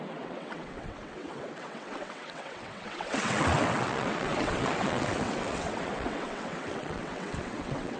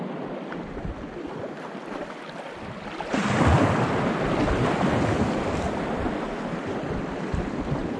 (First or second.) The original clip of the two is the second